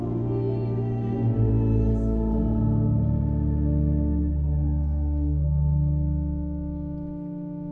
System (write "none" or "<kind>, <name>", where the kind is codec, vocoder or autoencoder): none